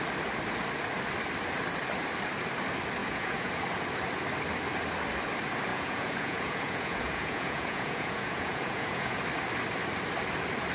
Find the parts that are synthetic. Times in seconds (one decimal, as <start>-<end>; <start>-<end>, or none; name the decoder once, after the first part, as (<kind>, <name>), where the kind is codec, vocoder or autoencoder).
3.0-3.5 (vocoder, Vocos); 5.7-9.2

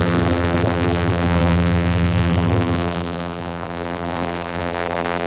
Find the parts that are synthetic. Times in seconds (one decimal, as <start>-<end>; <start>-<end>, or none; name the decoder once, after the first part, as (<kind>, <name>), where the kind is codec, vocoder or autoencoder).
0.0-5.3 (vocoder, BigVGAN v2)

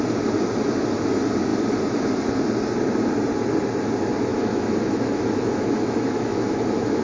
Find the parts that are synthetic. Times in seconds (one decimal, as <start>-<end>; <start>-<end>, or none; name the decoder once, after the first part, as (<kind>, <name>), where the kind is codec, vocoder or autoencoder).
4.3-7.0 (autoencoder, DAC-VAE)

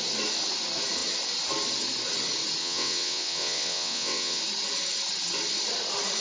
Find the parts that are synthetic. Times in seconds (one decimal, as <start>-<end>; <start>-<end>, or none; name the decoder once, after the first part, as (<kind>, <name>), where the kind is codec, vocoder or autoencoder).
2.6-4.4 (vocoder, WaveNeXt)